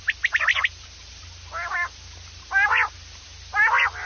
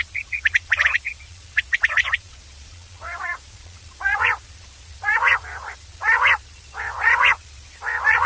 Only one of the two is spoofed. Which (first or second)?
second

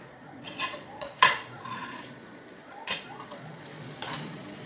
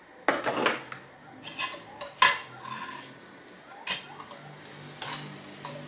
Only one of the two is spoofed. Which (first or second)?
first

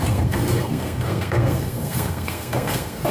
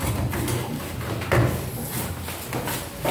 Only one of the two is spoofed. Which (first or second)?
first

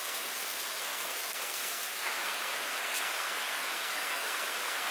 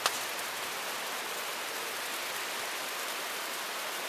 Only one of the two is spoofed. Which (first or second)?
first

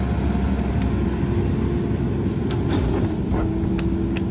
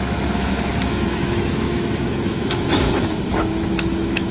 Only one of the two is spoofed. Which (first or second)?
second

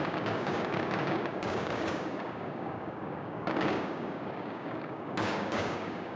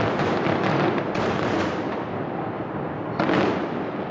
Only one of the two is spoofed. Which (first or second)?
first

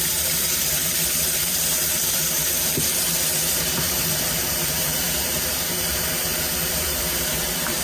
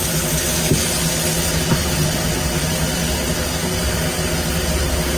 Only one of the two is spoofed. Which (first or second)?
first